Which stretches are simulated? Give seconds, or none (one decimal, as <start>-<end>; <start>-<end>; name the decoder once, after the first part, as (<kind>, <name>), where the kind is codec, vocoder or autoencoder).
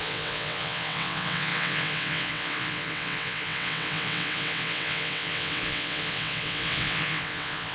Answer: 0.0-7.7 (vocoder, WaveNeXt)